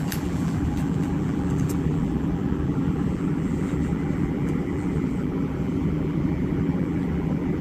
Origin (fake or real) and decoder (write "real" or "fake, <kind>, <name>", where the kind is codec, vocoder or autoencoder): fake, vocoder, BigVGAN v2